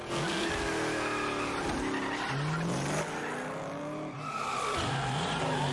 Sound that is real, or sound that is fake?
real